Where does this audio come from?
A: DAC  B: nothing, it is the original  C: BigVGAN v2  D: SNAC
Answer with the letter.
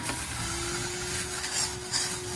B